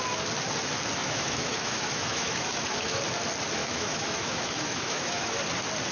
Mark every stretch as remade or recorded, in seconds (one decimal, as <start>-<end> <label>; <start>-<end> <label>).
0.0-1.0 recorded; 1.0-3.0 remade; 3.0-3.6 recorded; 3.6-5.3 remade; 5.3-5.9 recorded